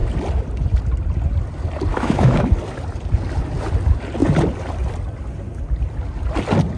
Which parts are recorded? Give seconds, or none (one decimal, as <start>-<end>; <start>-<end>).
0.0-1.9; 2.5-6.8